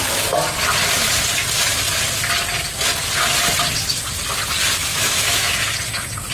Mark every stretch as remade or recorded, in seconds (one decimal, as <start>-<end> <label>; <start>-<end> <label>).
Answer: 0.0-4.9 recorded; 4.9-5.5 remade; 5.5-6.3 recorded